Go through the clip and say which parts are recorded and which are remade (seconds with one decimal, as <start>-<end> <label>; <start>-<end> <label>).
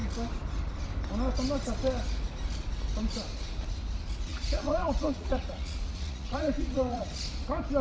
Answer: 0.0-4.3 recorded; 4.3-7.1 remade; 7.1-7.8 recorded